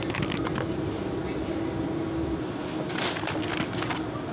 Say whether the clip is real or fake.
real